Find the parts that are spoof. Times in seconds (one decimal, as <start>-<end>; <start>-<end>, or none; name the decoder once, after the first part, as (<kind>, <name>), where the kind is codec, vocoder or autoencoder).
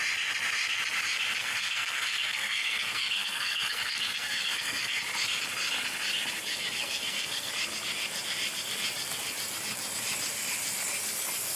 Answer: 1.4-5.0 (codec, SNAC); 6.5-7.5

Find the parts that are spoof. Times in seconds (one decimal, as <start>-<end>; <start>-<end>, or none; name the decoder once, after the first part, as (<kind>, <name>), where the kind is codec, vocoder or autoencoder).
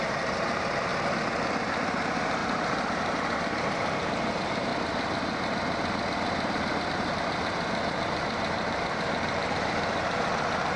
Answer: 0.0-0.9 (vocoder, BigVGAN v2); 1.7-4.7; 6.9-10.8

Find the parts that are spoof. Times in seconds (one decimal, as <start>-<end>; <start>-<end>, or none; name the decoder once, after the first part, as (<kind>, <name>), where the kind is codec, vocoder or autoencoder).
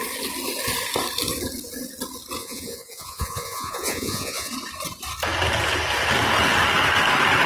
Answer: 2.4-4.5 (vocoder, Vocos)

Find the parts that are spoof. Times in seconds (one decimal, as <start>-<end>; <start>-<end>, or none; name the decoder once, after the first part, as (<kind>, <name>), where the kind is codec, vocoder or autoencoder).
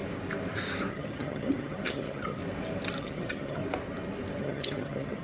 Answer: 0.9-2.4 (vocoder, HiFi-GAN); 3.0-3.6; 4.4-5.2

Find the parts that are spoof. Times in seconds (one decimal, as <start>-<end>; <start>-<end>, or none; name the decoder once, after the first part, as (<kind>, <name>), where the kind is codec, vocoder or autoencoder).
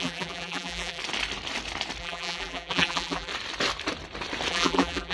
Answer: 0.0-1.0 (vocoder, BigVGAN v2); 2.0-3.3; 4.5-5.1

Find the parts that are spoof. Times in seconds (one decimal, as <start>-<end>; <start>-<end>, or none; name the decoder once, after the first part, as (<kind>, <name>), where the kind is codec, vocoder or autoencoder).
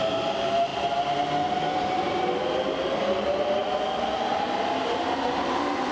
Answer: none